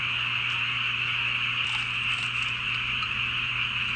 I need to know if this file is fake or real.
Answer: real